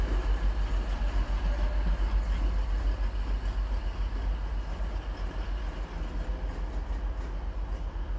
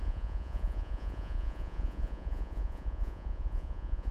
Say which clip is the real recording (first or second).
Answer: first